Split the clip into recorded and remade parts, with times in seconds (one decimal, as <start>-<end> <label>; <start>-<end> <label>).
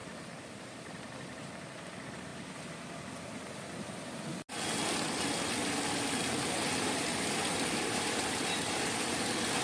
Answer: 0.0-1.5 remade; 1.5-7.1 recorded; 7.1-8.8 remade; 8.8-9.6 recorded